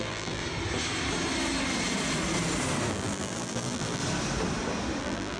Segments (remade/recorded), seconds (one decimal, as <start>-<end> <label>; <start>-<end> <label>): 0.0-0.4 remade; 0.4-2.9 recorded; 2.9-4.0 remade; 4.0-5.0 recorded; 5.0-5.4 remade